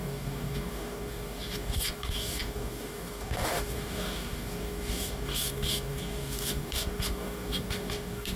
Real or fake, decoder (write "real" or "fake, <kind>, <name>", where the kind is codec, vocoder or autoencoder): fake, codec, DAC